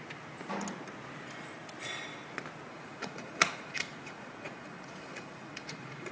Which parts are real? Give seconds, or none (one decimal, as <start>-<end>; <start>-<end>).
0.0-2.7